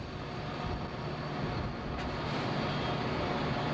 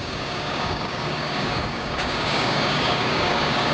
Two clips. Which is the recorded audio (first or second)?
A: first